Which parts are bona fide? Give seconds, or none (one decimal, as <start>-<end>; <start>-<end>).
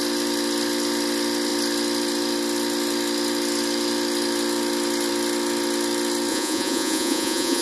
0.0-6.3